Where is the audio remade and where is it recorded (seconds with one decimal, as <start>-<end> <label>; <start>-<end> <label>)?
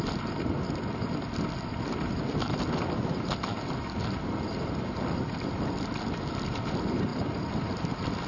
0.0-8.3 recorded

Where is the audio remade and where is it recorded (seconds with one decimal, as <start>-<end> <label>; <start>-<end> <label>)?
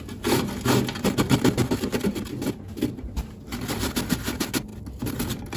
0.0-5.6 recorded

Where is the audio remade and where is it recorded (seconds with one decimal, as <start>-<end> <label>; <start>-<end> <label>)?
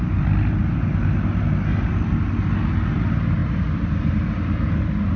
0.0-3.4 recorded; 3.4-4.3 remade; 4.3-5.2 recorded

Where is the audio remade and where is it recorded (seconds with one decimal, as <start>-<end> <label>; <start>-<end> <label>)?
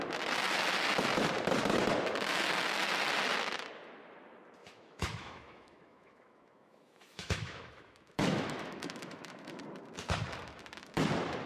0.0-4.6 recorded; 4.6-9.6 remade; 9.6-11.5 recorded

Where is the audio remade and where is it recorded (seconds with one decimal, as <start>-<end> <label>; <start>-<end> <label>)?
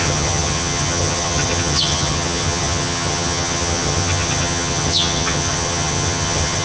0.0-6.6 remade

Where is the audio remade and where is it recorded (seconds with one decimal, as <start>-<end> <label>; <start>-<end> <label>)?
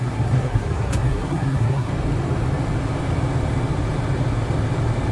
0.0-1.9 remade; 1.9-5.1 recorded